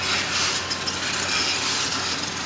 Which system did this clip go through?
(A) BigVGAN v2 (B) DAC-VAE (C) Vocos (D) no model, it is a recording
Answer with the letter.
D